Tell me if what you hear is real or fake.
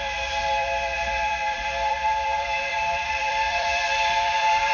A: fake